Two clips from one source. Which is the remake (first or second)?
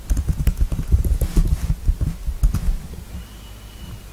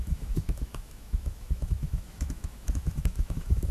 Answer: second